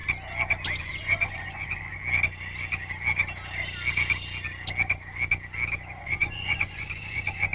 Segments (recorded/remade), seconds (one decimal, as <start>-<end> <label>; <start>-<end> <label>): 0.0-0.8 recorded; 0.8-2.0 remade; 2.0-6.0 recorded; 6.0-7.5 remade